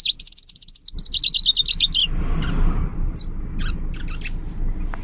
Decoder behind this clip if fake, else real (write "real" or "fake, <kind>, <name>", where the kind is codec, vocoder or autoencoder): real